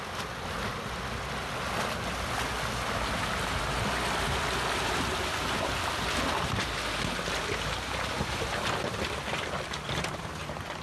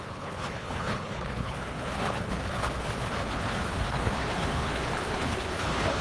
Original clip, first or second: first